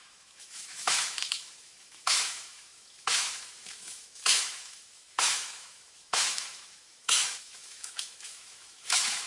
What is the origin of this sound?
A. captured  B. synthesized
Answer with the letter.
B